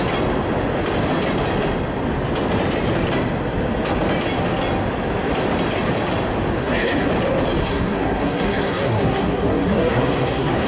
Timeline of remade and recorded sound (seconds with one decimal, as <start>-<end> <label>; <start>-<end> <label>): 0.0-6.6 recorded; 6.6-7.1 remade; 7.1-7.6 recorded; 7.6-10.7 remade